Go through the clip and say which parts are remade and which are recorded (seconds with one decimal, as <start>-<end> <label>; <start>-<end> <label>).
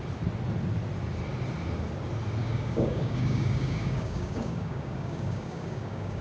0.0-2.4 recorded; 2.4-6.2 remade